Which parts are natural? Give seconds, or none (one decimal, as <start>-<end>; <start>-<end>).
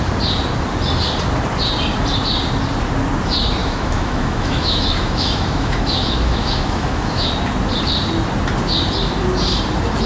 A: 0.0-3.6; 7.3-10.1